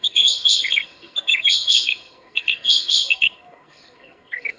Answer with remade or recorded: remade